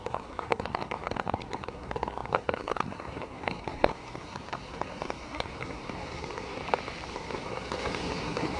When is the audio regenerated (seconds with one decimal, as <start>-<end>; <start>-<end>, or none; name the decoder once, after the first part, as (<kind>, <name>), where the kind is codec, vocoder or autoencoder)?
0.0-6.6 (codec, SNAC); 7.1-8.6